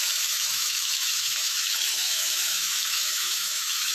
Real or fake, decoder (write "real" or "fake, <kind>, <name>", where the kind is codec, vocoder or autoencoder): fake, autoencoder, DAC-VAE